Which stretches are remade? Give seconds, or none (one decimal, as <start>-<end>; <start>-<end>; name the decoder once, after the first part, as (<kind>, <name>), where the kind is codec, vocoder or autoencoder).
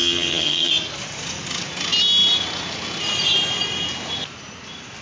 0.0-0.7 (vocoder, HiFi-GAN)